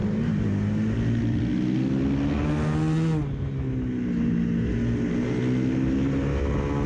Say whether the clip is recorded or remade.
recorded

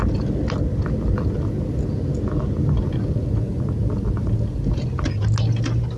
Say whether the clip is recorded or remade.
recorded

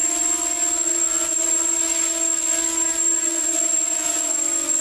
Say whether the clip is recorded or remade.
recorded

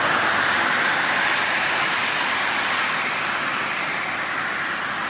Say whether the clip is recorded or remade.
remade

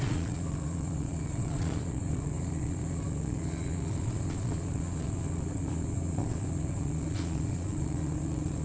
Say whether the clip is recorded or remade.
remade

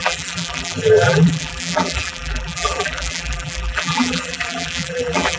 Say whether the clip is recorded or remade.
remade